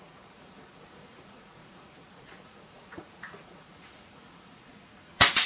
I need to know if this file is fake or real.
fake